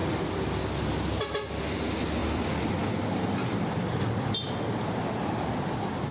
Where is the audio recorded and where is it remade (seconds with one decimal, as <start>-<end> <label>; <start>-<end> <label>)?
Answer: 0.0-6.1 recorded